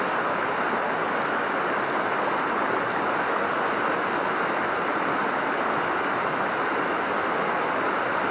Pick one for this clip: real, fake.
real